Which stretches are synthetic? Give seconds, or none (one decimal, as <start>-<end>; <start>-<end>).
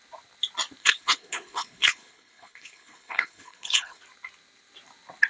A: 0.8-4.0